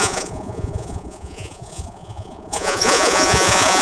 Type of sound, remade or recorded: remade